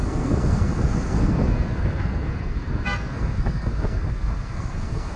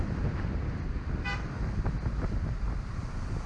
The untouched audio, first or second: second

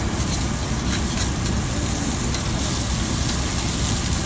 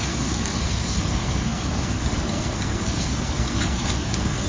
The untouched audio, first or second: first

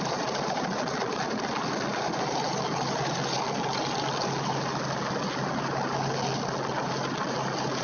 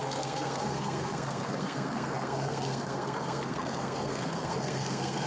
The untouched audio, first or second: first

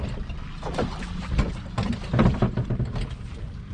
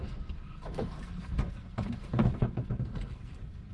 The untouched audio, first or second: first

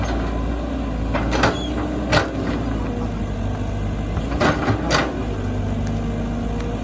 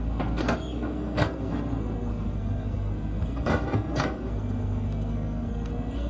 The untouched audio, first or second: first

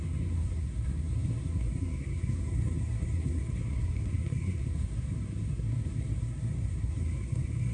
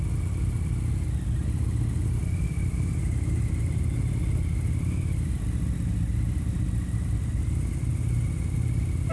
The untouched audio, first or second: second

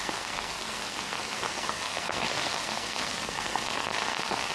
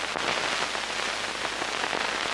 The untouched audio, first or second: second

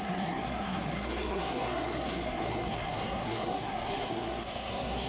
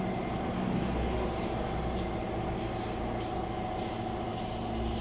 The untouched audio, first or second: second